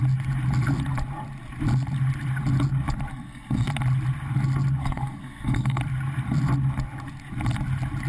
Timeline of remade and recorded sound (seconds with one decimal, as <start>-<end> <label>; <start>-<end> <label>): 0.0-3.1 recorded; 3.1-3.7 remade; 3.7-4.8 recorded; 4.8-5.8 remade; 5.8-8.1 recorded